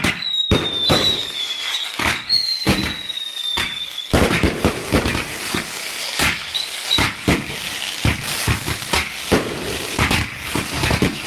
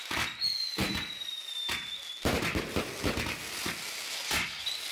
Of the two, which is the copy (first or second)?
first